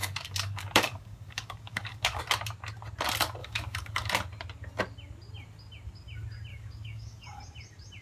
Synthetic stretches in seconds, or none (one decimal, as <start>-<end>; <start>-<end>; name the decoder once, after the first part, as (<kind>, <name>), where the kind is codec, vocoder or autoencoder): 0.0-2.2 (codec, DAC); 3.4-4.1; 6.5-7.4